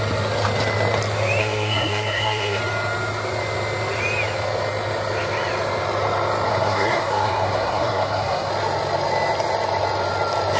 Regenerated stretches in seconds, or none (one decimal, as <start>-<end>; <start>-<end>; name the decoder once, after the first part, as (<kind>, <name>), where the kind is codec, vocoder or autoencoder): 1.4-2.6 (codec, SNAC); 6.5-8.5